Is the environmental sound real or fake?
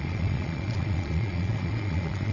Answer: fake